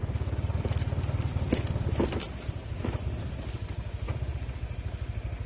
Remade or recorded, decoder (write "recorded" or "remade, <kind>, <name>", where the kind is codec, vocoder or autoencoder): recorded